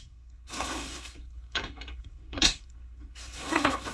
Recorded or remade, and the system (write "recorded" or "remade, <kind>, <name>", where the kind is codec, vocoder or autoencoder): remade, codec, SNAC